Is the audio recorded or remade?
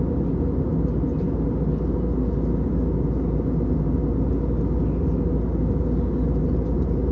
recorded